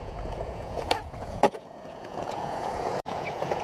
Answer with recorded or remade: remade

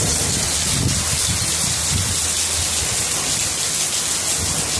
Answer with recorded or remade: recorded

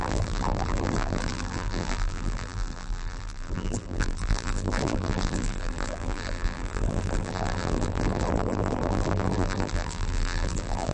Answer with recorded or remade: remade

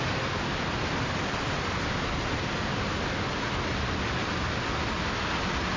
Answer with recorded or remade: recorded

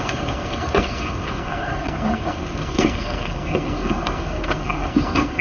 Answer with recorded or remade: remade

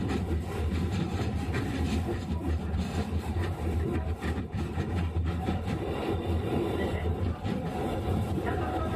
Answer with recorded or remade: remade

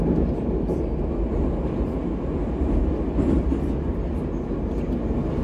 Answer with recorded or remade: recorded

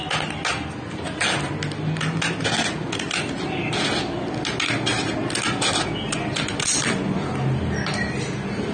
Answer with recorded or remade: recorded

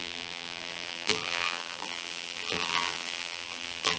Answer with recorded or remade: remade